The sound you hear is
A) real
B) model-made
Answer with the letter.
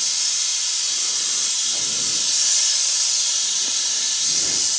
A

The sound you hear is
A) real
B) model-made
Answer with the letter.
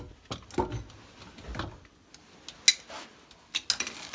A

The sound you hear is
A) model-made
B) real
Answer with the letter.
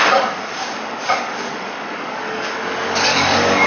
A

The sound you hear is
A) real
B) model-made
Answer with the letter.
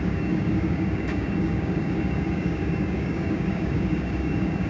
B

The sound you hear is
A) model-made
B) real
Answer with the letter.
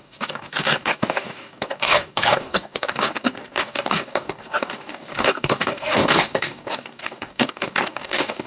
A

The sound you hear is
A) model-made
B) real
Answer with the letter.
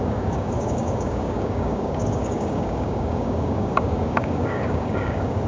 A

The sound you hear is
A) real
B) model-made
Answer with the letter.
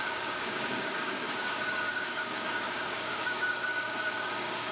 B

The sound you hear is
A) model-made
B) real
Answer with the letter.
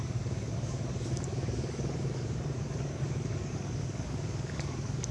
A